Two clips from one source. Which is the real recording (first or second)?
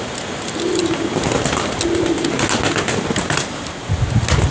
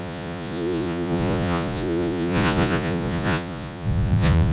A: first